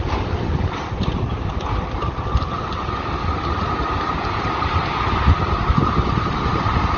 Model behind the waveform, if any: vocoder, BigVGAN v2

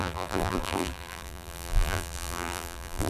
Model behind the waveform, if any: vocoder, BigVGAN v2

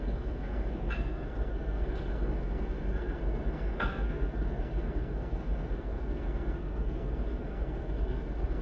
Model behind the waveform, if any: codec, SNAC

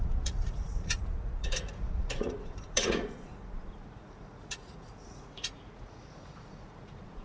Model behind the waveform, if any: vocoder, Vocos